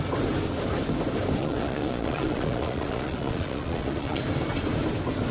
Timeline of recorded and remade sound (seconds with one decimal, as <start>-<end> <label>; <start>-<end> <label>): 0.0-1.4 recorded; 1.4-4.2 remade; 4.2-5.3 recorded